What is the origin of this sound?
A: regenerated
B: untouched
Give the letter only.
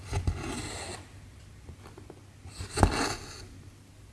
B